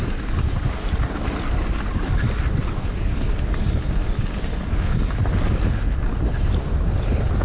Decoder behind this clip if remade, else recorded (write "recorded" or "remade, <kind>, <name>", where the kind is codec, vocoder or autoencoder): recorded